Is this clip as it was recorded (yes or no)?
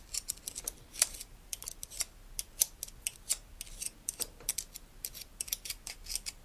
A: yes